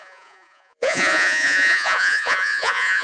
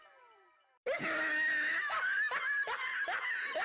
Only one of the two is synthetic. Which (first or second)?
first